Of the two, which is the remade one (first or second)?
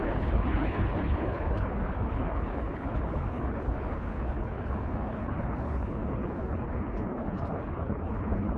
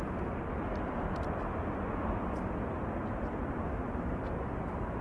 first